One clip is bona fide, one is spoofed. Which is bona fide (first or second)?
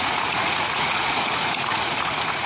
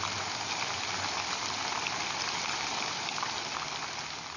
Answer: second